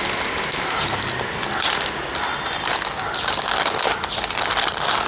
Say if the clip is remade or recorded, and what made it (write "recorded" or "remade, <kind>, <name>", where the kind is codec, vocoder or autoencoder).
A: recorded